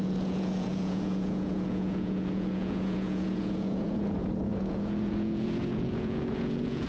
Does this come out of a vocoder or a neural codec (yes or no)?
yes